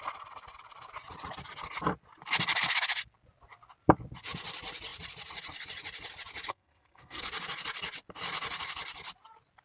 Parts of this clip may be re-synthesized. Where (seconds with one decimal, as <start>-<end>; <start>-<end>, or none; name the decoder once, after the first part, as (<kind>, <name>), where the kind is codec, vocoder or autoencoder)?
6.5-7.2 (codec, SNAC)